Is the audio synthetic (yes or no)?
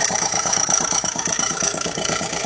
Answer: yes